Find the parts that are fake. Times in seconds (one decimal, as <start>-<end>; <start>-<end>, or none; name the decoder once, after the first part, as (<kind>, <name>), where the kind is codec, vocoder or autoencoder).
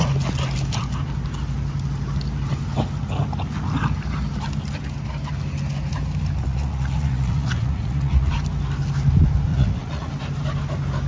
6.4-8.3 (vocoder, Vocos); 9.5-10.1